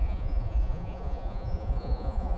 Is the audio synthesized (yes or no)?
yes